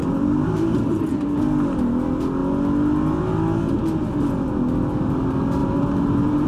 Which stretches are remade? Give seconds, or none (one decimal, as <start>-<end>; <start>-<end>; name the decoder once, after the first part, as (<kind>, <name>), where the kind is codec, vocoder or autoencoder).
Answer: 0.0-1.0 (vocoder, BigVGAN v2); 5.6-6.5